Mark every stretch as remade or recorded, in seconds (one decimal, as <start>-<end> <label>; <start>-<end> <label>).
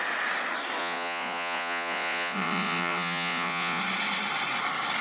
0.0-0.8 recorded; 0.8-3.8 remade; 3.8-5.0 recorded